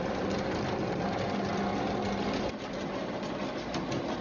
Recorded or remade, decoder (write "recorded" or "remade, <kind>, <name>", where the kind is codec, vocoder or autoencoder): recorded